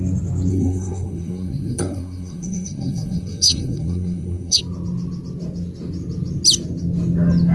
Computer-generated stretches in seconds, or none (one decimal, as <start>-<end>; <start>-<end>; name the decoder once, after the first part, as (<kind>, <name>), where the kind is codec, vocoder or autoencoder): 0.5-4.6 (codec, SNAC)